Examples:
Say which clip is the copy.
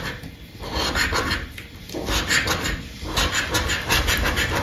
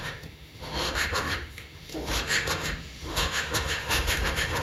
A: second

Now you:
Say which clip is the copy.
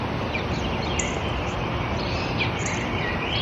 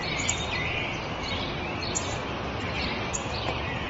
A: second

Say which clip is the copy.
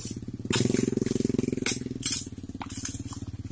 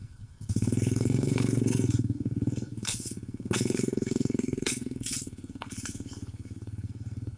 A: second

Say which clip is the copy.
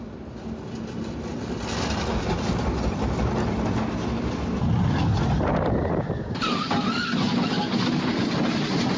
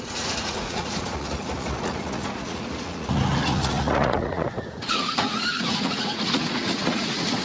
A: second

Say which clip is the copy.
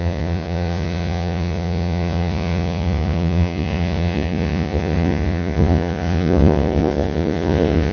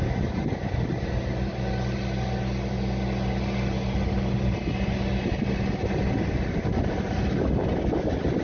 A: first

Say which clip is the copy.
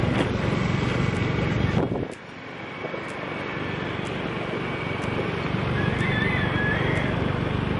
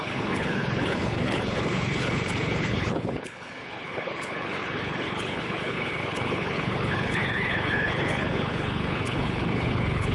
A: second